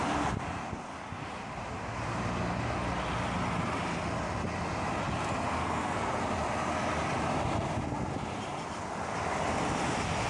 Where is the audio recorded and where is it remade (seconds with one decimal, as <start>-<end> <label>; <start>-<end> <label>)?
0.0-5.6 recorded; 5.6-6.2 remade; 6.2-10.3 recorded